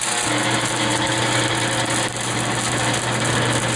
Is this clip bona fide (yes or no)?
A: yes